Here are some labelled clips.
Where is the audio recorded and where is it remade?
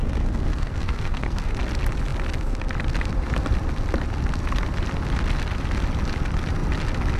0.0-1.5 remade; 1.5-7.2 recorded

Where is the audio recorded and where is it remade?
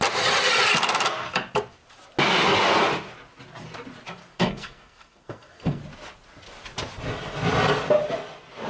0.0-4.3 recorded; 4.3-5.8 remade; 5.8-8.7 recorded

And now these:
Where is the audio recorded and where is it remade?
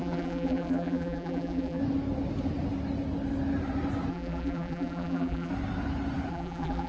0.0-1.8 remade; 1.8-4.1 recorded; 4.1-5.5 remade; 5.5-6.3 recorded; 6.3-6.9 remade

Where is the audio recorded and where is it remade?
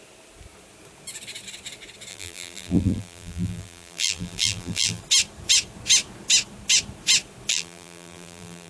0.0-2.1 recorded; 2.1-5.0 remade; 5.0-7.5 recorded; 7.5-8.7 remade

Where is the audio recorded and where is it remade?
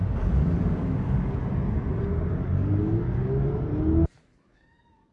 0.0-1.4 remade; 1.4-2.3 recorded; 2.3-3.7 remade; 3.7-4.2 recorded; 4.2-5.1 remade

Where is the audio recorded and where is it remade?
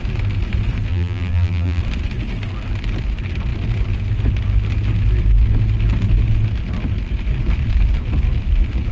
0.0-0.9 recorded; 0.9-1.8 remade; 1.8-8.9 recorded